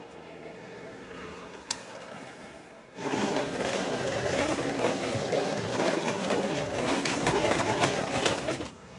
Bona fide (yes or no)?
no